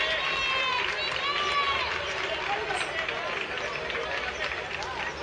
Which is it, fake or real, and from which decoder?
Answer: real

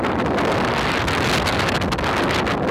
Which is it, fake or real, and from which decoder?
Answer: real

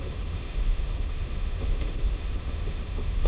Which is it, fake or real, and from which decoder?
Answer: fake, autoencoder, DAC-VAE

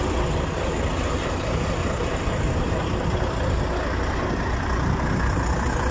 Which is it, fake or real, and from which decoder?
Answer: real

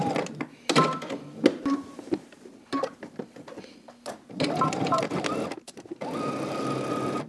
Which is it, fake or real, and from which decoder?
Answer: real